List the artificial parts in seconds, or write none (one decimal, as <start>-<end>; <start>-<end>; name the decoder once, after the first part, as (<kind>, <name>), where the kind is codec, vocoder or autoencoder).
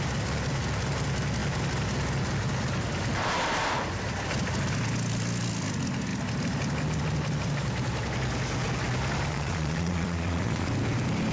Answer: 9.3-10.7 (vocoder, Vocos)